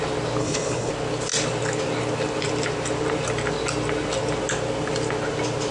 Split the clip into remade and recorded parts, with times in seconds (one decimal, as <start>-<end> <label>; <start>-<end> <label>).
0.0-0.4 recorded; 0.4-0.9 remade; 0.9-5.7 recorded

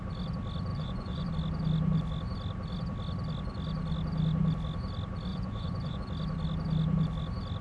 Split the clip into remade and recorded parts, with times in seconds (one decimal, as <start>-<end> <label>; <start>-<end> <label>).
0.0-0.7 recorded; 0.7-1.3 remade; 1.3-5.3 recorded; 5.3-6.0 remade; 6.0-7.6 recorded

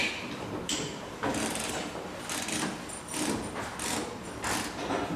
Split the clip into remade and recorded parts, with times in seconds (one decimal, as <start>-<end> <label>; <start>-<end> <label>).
0.0-5.2 recorded